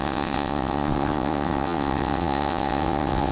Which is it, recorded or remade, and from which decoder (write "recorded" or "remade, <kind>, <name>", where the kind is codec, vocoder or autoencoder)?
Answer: remade, vocoder, WaveNeXt